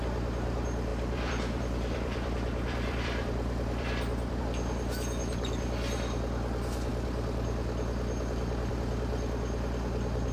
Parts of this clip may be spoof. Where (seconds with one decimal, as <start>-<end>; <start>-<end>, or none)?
0.9-4.4